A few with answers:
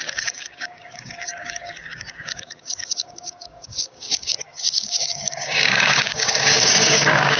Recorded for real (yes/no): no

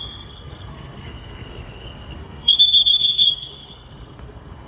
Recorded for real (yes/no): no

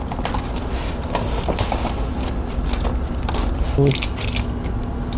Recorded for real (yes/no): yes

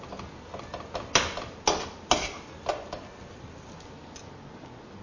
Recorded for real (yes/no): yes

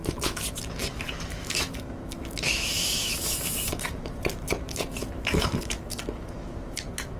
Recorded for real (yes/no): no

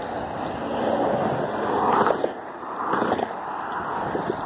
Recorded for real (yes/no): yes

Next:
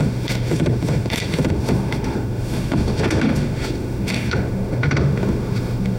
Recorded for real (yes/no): no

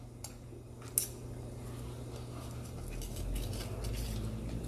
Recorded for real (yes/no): yes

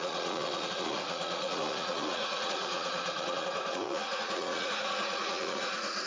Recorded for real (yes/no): no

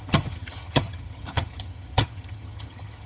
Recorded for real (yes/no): no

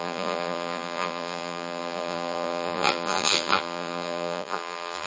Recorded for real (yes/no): no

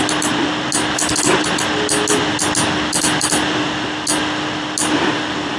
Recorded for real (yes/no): yes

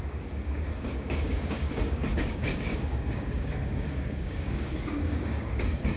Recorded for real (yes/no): no